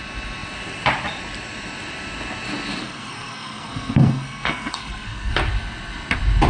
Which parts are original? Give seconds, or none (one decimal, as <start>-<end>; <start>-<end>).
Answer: 0.0-2.8; 5.3-6.5